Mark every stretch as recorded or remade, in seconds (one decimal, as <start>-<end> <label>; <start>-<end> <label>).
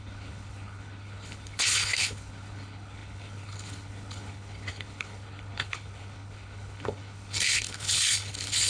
0.0-8.7 remade